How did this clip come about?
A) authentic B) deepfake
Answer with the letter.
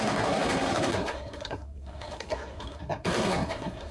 B